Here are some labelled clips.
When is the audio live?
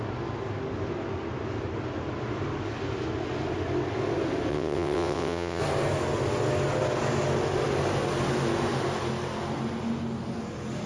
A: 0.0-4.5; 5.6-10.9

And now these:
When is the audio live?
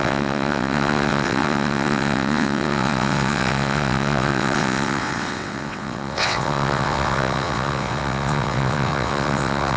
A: none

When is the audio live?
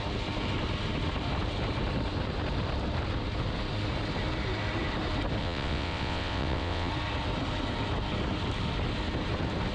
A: 0.0-5.4; 6.9-9.7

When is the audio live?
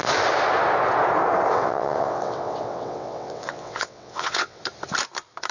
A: 0.0-1.5; 4.6-5.5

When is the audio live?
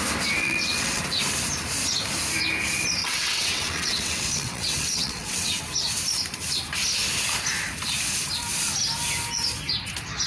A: 0.0-0.4; 1.0-3.0; 5.6-10.3